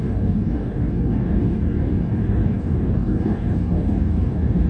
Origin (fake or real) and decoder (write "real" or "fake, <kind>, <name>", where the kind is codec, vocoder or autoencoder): fake, codec, DAC